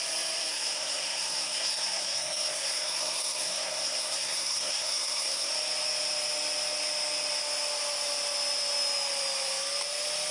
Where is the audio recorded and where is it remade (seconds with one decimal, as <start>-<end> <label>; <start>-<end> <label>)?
0.0-0.5 recorded; 0.5-5.5 remade; 5.5-10.3 recorded